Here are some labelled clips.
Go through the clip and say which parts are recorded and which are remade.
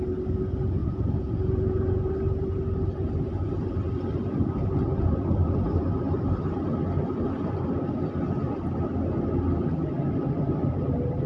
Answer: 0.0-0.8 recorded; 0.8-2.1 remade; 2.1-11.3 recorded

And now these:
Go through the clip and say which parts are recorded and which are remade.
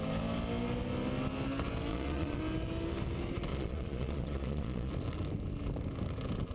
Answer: 0.0-1.9 recorded; 1.9-2.4 remade; 2.4-3.5 recorded; 3.5-4.9 remade; 4.9-6.5 recorded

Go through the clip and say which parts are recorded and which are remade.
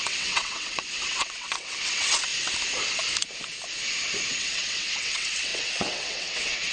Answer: 0.0-2.3 remade; 2.3-4.3 recorded; 4.3-6.7 remade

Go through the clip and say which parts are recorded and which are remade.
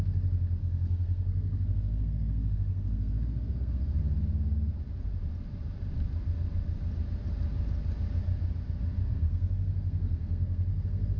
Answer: 0.0-0.6 recorded; 0.6-4.0 remade; 4.0-9.1 recorded; 9.1-11.2 remade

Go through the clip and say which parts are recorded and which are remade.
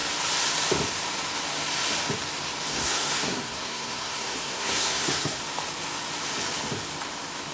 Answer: 0.0-2.7 recorded; 2.7-5.4 remade; 5.4-7.5 recorded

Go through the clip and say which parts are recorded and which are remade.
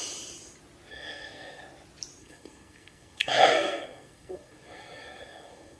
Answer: 0.0-0.9 recorded; 0.9-1.6 remade; 1.6-2.2 recorded; 2.2-5.8 remade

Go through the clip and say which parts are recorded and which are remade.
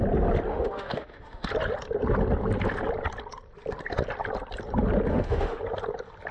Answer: 0.0-0.5 recorded; 0.5-1.5 remade; 1.5-5.1 recorded; 5.1-5.6 remade; 5.6-6.3 recorded